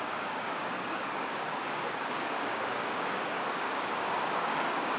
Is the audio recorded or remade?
remade